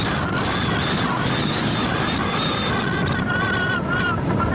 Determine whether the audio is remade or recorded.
recorded